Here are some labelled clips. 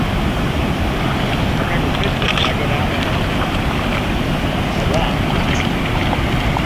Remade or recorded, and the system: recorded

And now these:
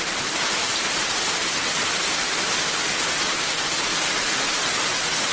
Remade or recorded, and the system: recorded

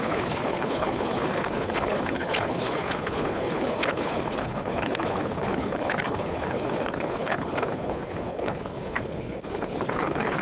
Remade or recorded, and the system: remade, codec, HILCodec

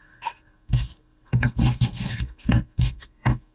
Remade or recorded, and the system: remade, codec, SNAC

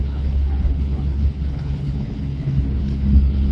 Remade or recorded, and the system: remade, codec, HILCodec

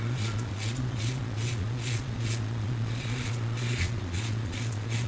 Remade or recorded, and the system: remade, vocoder, Vocos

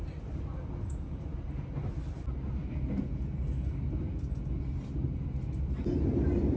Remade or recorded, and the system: recorded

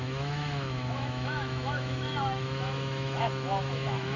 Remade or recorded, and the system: remade, autoencoder, DAC-VAE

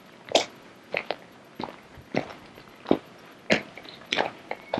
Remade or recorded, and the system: remade, vocoder, BigVGAN v2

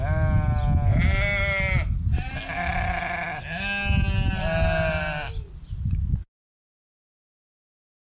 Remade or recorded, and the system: recorded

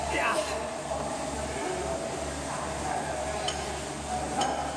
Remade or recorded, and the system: recorded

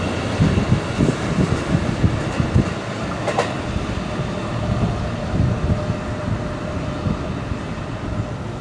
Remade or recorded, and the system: recorded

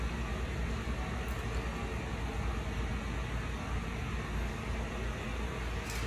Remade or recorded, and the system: recorded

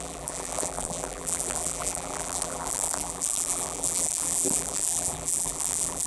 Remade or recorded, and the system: remade, vocoder, BigVGAN v2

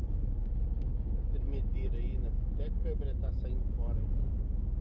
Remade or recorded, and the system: recorded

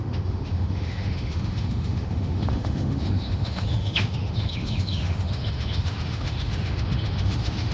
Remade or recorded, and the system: remade, autoencoder, DAC-VAE